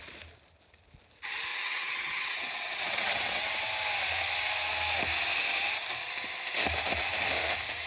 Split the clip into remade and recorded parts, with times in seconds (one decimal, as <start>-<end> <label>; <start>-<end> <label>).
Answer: 0.0-1.5 recorded; 1.5-3.7 remade; 3.7-7.9 recorded